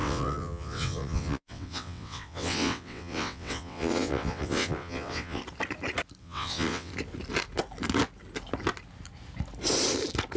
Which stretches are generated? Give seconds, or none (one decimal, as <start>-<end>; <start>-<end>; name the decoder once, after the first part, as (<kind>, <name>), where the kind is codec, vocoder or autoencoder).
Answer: 0.0-5.4 (vocoder, WaveNeXt); 6.2-6.9